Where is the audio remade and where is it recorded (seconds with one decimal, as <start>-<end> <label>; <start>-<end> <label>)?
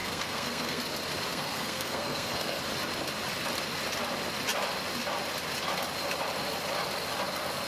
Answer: 0.0-0.8 remade; 0.8-1.3 recorded; 1.3-2.6 remade; 2.6-7.7 recorded